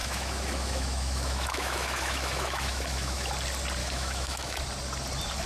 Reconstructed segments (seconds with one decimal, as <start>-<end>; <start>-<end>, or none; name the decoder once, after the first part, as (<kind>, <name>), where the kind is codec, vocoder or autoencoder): 0.0-3.3 (autoencoder, DAC-VAE); 3.8-4.6